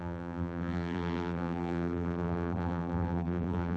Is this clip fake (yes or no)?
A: yes